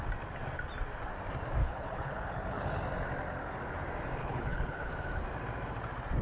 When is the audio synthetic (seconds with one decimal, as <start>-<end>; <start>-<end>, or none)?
1.6-2.6; 4.2-4.9